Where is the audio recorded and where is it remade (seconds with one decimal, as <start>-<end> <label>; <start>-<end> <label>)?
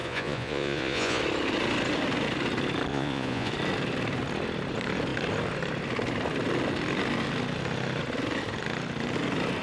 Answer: 0.0-1.2 remade; 1.2-2.9 recorded; 2.9-3.5 remade; 3.5-9.6 recorded